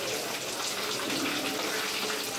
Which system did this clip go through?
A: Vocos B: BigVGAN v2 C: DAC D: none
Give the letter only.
D